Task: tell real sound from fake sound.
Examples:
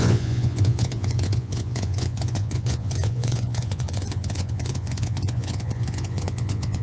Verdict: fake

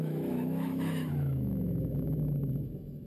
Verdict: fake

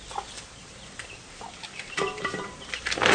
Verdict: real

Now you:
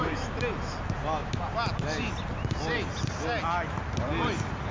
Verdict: real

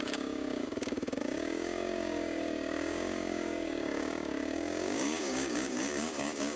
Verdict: fake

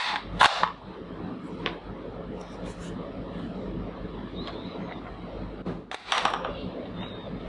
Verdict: real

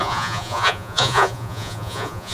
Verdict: fake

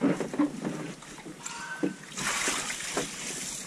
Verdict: real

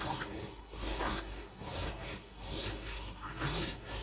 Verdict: fake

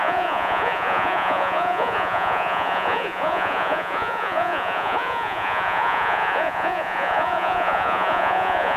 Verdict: fake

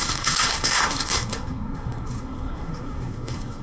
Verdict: fake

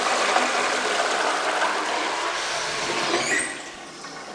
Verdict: real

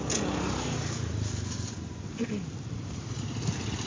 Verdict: real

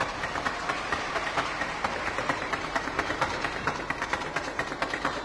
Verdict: fake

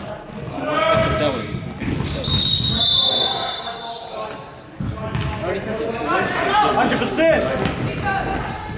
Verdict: real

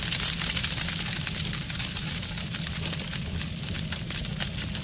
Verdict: real